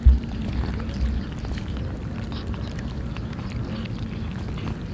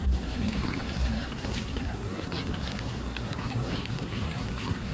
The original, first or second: first